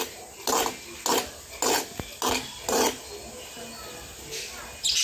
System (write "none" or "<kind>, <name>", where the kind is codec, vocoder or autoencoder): none